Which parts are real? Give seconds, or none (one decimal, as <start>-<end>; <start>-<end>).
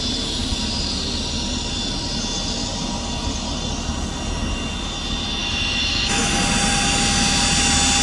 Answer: 0.0-5.4; 6.3-8.0